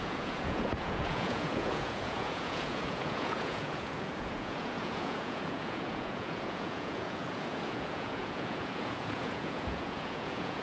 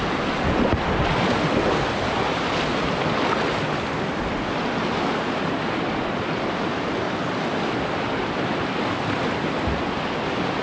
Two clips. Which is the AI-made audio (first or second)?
first